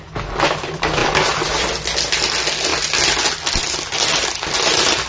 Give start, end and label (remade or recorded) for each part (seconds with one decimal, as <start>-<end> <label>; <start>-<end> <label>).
0.0-5.1 recorded